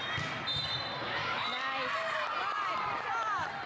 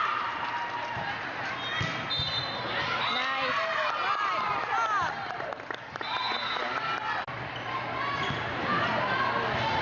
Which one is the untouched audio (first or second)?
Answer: second